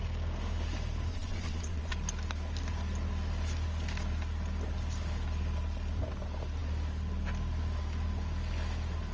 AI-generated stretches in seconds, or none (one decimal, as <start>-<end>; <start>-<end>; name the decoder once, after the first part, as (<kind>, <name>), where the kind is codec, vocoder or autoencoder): 1.1-1.9 (vocoder, Vocos)